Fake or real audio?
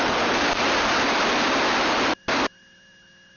real